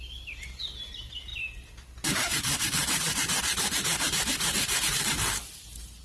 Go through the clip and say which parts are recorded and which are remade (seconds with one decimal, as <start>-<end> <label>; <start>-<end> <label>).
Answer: 0.0-6.0 recorded